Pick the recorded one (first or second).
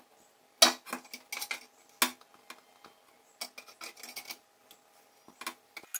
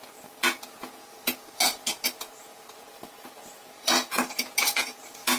first